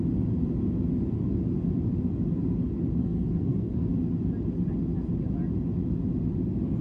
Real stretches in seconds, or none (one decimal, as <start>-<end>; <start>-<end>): 0.0-3.0; 3.9-6.8